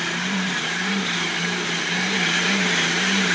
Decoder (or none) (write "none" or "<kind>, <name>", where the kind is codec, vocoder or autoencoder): vocoder, BigVGAN v2